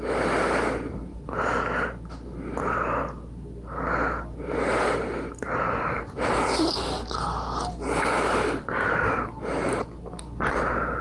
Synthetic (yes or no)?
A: no